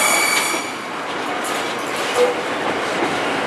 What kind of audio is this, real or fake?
real